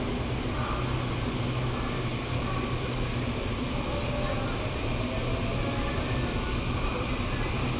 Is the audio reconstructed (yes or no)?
no